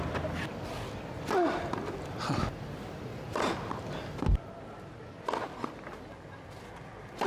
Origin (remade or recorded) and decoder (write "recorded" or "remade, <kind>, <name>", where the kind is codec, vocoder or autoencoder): recorded